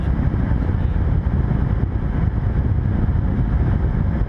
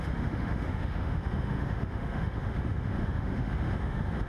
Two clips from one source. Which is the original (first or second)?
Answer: first